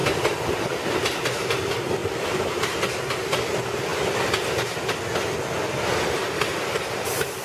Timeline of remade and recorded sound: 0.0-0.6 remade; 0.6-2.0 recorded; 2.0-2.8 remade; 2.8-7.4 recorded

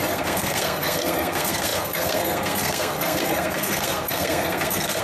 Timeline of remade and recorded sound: 0.0-5.0 remade

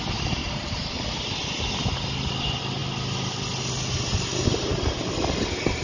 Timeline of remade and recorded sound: 0.0-0.4 recorded; 0.4-0.9 remade; 0.9-5.8 recorded

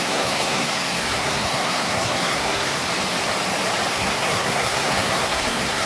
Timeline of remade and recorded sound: 0.0-2.8 remade; 2.8-3.9 recorded; 3.9-5.9 remade